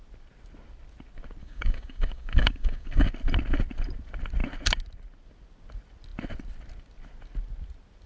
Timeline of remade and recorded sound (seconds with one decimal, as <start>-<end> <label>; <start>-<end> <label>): 0.0-1.4 recorded; 1.4-3.1 remade; 3.1-8.1 recorded